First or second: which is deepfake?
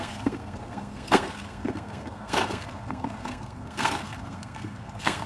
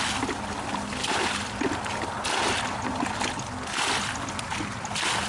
first